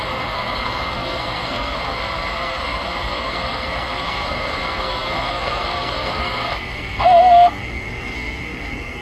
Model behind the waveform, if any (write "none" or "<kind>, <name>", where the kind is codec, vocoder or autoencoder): codec, SNAC